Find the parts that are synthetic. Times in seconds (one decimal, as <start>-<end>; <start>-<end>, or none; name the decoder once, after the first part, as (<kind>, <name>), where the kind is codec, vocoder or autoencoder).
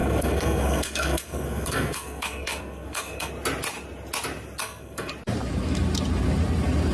0.0-3.3 (codec, SNAC); 4.6-5.1